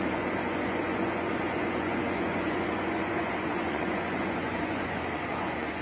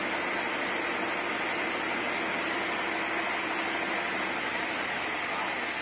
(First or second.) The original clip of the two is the second